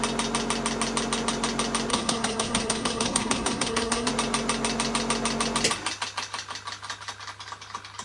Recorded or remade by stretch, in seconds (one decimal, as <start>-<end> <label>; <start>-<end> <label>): 0.0-1.9 recorded; 1.9-4.1 remade; 4.1-8.0 recorded